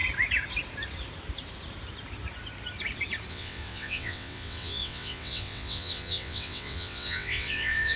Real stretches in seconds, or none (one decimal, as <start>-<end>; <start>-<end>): 0.0-3.3